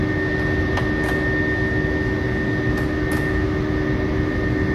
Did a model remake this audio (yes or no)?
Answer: no